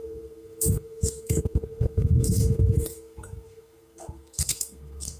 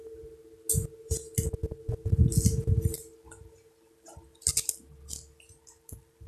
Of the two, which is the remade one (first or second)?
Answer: first